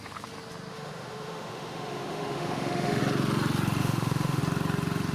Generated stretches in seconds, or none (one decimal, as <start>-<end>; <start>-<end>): 0.7-3.0; 3.8-4.4